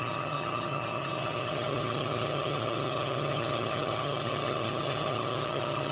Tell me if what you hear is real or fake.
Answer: fake